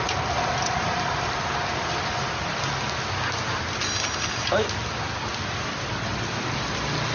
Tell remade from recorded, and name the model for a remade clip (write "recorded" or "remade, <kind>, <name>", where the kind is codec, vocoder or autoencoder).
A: recorded